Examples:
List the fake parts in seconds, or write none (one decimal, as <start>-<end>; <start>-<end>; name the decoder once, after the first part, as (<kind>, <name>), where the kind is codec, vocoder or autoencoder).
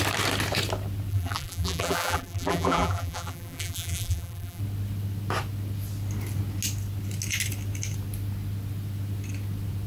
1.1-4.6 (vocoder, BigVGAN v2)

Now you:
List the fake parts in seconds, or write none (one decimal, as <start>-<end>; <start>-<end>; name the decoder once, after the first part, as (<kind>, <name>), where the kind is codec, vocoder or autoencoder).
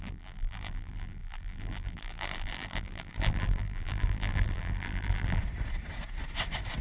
0.0-5.4 (vocoder, BigVGAN v2)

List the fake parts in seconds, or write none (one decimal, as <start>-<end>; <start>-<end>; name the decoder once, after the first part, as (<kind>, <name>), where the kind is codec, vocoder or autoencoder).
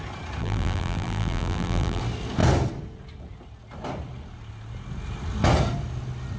0.4-2.0 (vocoder, BigVGAN v2)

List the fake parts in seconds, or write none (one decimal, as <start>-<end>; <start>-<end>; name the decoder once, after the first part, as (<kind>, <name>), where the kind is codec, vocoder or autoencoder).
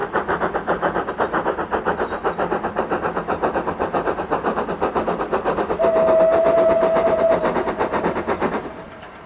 0.0-1.1 (vocoder, BigVGAN v2)